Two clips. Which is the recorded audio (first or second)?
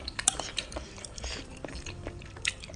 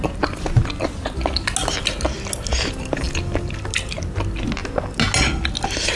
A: second